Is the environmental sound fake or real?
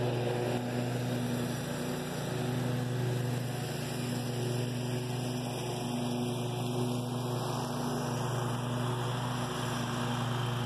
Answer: real